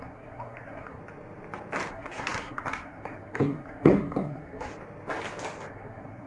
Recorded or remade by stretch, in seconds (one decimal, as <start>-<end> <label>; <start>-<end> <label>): 0.0-1.0 remade; 1.0-1.9 recorded; 1.9-4.7 remade; 4.7-5.7 recorded; 5.7-6.3 remade